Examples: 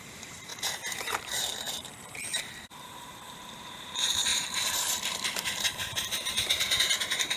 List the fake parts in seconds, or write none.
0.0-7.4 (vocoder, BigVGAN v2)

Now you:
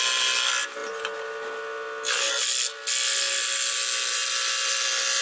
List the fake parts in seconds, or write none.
none

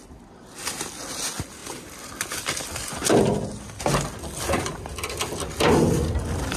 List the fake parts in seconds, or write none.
none

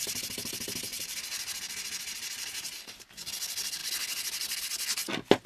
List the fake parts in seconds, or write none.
0.9-3.3 (vocoder, BigVGAN v2)

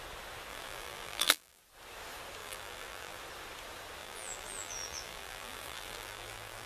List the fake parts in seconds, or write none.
0.5-1.6 (vocoder, BigVGAN v2); 2.4-3.2; 4.0-6.7